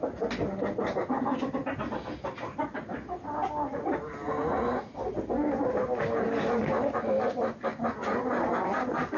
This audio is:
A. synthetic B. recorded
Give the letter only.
B